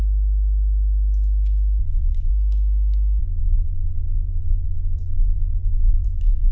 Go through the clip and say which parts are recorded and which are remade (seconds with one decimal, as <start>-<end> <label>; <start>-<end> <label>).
0.0-1.8 recorded; 1.8-2.3 remade; 2.3-3.2 recorded; 3.2-6.5 remade